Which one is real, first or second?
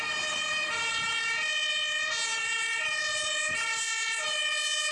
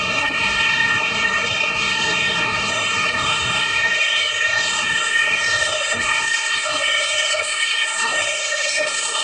first